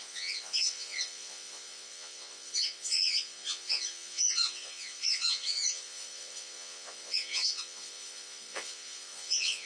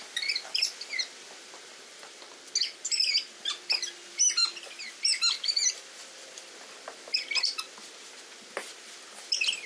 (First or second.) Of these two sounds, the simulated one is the first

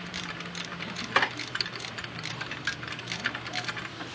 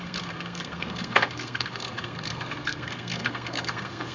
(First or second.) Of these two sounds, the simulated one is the second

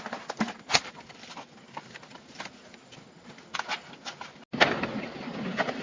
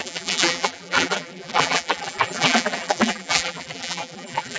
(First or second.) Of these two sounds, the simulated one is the second